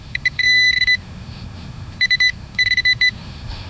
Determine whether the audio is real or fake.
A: fake